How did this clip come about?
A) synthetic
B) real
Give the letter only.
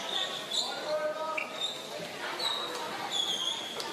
B